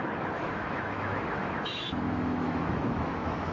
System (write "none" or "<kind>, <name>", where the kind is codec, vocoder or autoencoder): autoencoder, DAC-VAE